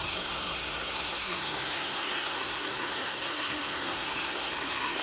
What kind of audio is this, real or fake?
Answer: fake